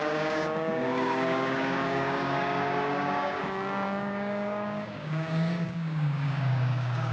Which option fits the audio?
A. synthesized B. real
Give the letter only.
A